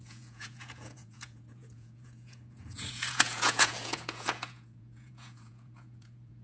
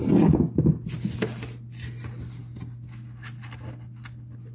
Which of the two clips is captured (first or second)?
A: second